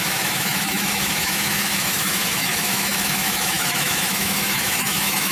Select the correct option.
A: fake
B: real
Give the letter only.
A